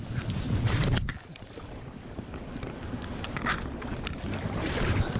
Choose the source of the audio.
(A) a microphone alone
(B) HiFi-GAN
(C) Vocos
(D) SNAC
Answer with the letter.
A